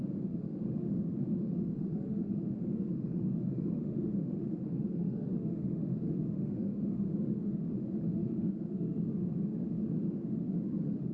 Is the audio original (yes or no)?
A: no